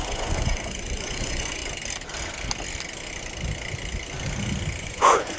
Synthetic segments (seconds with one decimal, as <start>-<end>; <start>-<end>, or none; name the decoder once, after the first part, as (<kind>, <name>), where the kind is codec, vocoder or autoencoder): 0.0-1.6 (vocoder, Vocos); 4.8-5.4